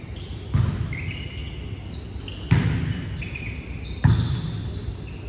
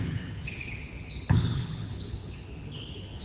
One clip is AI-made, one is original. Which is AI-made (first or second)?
second